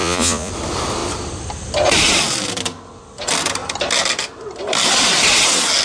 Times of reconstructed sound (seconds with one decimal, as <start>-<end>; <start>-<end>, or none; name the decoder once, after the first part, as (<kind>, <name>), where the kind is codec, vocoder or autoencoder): 0.0-0.5 (vocoder, Vocos)